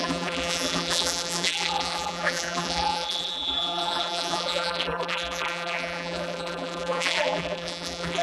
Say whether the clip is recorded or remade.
remade